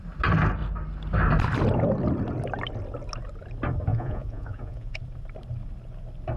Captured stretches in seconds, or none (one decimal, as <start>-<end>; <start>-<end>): 0.0-3.9; 5.0-6.4